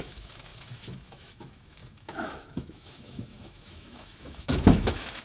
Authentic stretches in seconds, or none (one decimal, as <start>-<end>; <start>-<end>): none